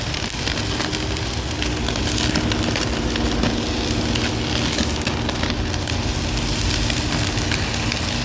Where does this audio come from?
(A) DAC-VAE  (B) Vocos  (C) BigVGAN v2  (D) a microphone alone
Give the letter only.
D